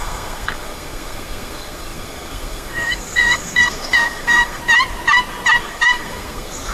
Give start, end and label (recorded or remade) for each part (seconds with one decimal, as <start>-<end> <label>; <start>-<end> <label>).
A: 0.0-4.6 remade; 4.6-5.6 recorded; 5.6-6.7 remade